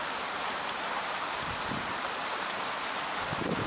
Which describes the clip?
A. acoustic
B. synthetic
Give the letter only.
B